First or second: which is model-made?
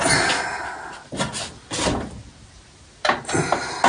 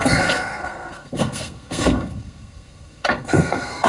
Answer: second